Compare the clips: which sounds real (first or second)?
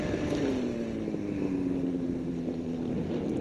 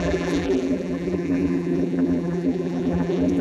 first